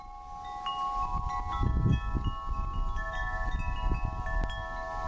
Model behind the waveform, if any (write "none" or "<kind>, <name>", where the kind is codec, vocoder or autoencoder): none